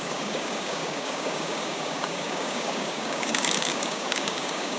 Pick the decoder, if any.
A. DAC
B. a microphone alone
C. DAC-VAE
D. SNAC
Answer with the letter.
A